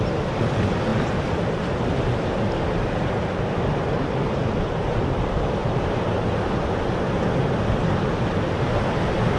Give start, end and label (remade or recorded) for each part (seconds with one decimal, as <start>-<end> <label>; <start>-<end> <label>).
0.0-5.6 recorded; 5.6-6.5 remade; 6.5-9.4 recorded